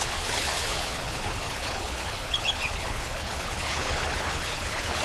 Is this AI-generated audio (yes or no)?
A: yes